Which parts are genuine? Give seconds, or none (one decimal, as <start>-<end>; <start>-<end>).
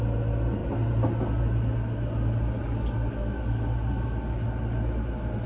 0.0-5.5